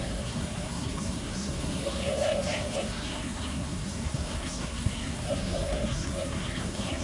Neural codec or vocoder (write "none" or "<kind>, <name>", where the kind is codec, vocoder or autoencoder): codec, SNAC